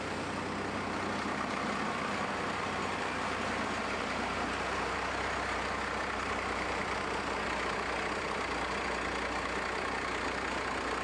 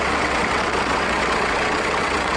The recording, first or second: first